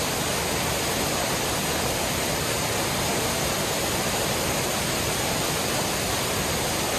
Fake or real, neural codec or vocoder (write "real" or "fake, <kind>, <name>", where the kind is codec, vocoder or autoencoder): real